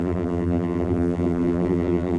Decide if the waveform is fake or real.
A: fake